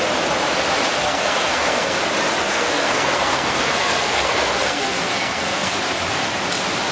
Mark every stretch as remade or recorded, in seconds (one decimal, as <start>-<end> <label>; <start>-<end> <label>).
0.0-1.0 recorded; 1.0-2.0 remade; 2.0-2.4 recorded; 2.4-5.8 remade; 5.8-6.9 recorded